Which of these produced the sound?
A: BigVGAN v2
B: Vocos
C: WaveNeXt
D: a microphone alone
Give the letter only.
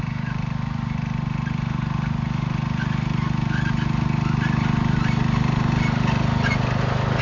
D